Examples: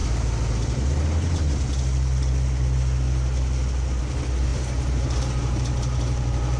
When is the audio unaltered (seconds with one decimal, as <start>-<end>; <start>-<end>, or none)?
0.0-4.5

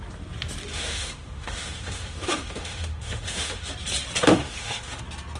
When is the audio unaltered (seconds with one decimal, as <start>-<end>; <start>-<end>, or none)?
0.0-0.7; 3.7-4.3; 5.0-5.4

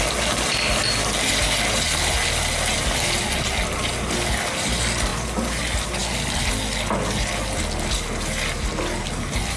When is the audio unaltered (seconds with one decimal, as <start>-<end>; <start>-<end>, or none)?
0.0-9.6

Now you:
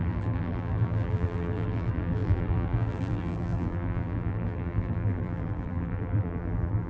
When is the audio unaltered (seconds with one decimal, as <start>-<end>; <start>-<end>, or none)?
none

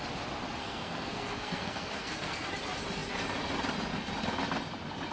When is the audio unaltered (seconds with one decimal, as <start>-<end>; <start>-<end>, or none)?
0.0-0.6; 2.5-5.1